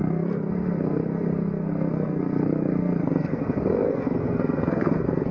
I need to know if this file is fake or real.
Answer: fake